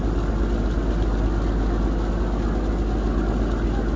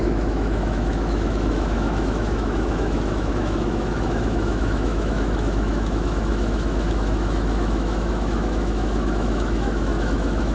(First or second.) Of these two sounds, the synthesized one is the second